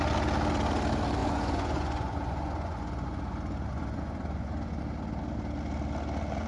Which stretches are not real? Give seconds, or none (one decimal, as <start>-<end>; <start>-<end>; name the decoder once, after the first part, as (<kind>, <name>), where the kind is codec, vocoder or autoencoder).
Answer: 1.2-4.8 (vocoder, Vocos)